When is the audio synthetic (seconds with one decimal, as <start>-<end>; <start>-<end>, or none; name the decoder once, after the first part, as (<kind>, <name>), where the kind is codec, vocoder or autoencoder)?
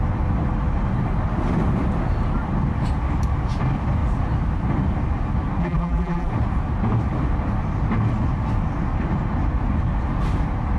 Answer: 5.6-6.3 (vocoder, BigVGAN v2)